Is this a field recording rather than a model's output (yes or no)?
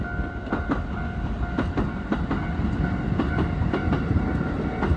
yes